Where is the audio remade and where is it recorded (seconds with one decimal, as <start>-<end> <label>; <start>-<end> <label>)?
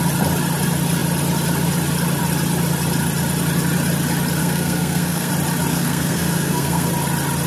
0.0-4.4 recorded; 4.4-5.3 remade; 5.3-5.7 recorded; 5.7-6.9 remade; 6.9-7.5 recorded